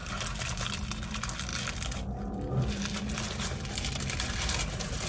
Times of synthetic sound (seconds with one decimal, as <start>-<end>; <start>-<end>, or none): none

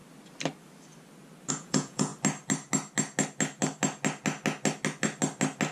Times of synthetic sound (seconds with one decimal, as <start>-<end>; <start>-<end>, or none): 1.5-2.1